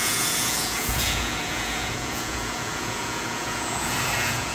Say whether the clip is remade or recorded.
remade